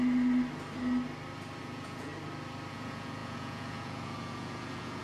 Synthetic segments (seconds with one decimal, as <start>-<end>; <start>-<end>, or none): 1.6-2.1; 2.7-5.0